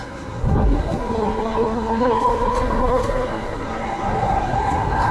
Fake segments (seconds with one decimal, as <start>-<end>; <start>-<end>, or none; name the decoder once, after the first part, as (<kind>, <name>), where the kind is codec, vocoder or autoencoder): 0.0-5.1 (codec, SNAC)